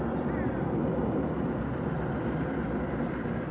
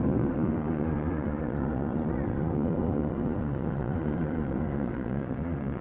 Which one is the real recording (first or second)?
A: first